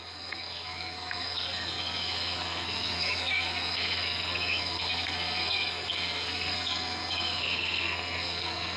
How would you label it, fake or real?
fake